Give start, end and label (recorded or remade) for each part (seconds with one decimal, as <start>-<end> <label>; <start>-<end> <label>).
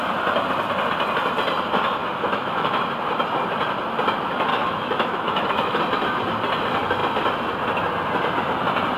0.0-2.0 recorded; 2.0-2.8 remade; 2.8-4.5 recorded; 4.5-5.8 remade; 5.8-9.0 recorded